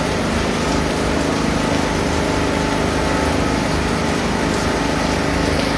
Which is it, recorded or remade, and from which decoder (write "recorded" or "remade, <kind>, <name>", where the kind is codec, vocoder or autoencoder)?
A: recorded